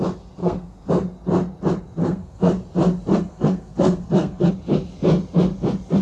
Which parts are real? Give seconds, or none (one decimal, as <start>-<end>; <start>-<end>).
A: 0.0-0.4; 0.9-2.0; 2.5-3.1; 4.5-6.0

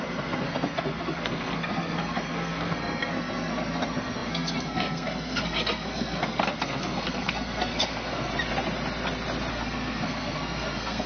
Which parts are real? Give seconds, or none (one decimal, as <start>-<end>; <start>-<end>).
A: 8.3-9.5

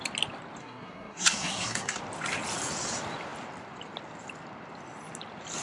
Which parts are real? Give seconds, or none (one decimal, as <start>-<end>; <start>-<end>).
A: 0.0-0.6; 2.0-5.6

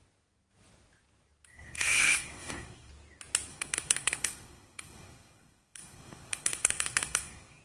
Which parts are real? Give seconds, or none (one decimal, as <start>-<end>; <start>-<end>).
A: 0.0-1.5; 2.9-3.5